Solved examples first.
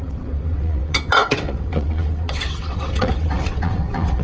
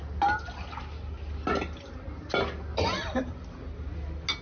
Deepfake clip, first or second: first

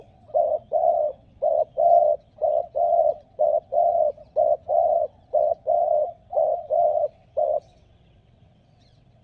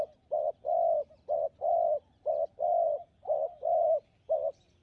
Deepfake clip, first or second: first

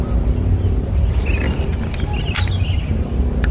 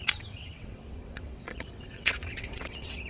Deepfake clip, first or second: second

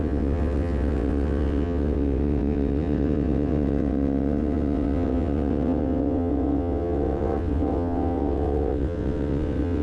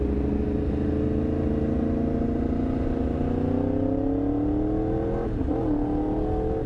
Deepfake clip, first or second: first